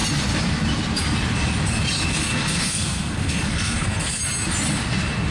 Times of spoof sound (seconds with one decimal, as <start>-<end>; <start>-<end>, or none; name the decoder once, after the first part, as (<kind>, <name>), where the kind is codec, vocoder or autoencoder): 2.1-4.2 (codec, SNAC)

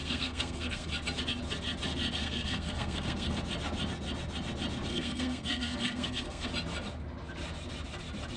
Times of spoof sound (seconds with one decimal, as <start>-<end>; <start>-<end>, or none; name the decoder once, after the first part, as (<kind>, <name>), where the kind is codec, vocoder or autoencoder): 0.0-0.9 (codec, SNAC); 2.2-3.4; 4.9-6.5